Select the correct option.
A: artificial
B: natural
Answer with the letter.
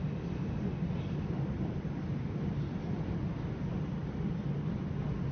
B